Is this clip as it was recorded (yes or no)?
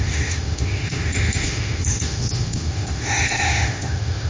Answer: no